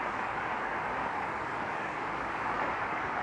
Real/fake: fake